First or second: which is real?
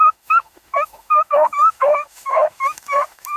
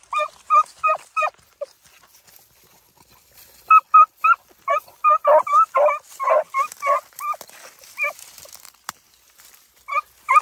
second